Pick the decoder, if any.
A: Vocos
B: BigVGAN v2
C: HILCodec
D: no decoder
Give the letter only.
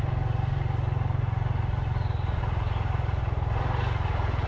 D